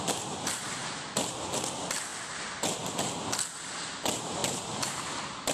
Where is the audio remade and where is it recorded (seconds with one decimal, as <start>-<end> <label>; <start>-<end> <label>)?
0.0-4.4 recorded; 4.4-5.0 remade; 5.0-5.5 recorded